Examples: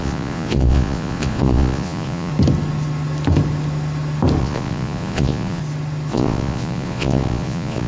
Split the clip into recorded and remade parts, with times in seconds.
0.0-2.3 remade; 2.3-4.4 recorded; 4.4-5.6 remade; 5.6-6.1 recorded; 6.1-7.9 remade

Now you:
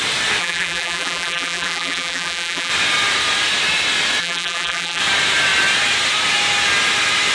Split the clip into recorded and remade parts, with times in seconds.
0.0-0.4 recorded; 0.4-2.7 remade; 2.7-4.2 recorded; 4.2-5.0 remade; 5.0-7.3 recorded

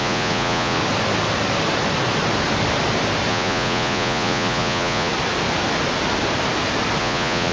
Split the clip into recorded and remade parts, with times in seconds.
0.0-0.8 remade; 0.8-3.3 recorded; 3.3-5.1 remade; 5.1-7.0 recorded; 7.0-7.5 remade

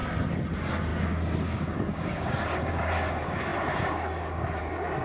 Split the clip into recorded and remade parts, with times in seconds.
0.0-0.5 recorded; 0.5-5.0 remade

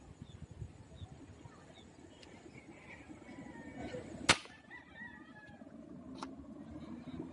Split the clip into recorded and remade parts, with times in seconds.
0.0-7.3 recorded

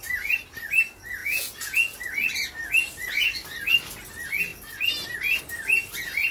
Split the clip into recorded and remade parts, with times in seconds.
0.0-1.2 recorded; 1.2-2.0 remade; 2.0-6.3 recorded

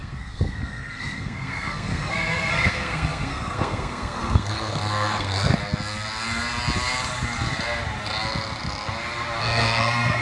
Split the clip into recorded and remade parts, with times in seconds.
0.0-5.6 remade; 5.6-9.4 recorded; 9.4-10.2 remade

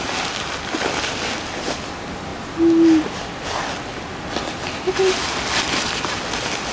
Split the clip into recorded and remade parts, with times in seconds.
0.0-6.7 recorded